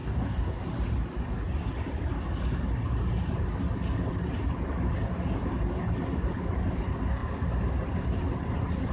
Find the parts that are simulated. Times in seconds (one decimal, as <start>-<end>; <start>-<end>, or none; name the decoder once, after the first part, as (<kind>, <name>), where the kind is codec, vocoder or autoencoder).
0.0-0.6 (codec, DAC)